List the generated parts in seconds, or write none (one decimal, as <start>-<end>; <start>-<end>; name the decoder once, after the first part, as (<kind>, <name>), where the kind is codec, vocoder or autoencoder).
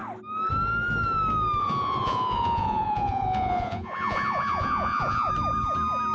1.6-5.3 (vocoder, Vocos)